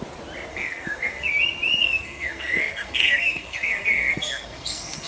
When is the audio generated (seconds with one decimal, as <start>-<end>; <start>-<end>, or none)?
0.5-1.3; 1.8-5.1